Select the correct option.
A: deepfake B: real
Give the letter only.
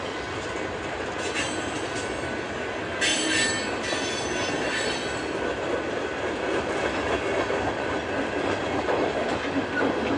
B